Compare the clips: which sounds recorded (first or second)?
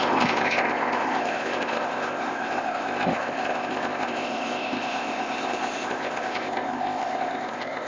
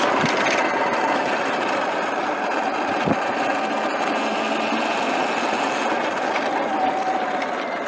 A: second